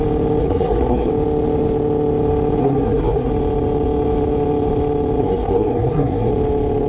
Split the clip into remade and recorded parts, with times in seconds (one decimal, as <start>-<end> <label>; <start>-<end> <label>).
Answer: 0.0-0.4 recorded; 0.4-1.1 remade; 1.1-2.6 recorded; 2.6-3.3 remade; 3.3-5.2 recorded; 5.2-6.3 remade; 6.3-6.9 recorded